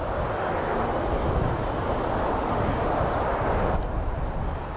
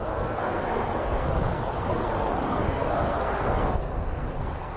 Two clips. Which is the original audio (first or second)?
first